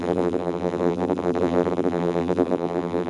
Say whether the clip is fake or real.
fake